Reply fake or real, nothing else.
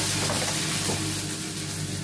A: real